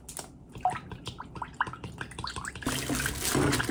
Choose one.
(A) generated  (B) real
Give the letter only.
B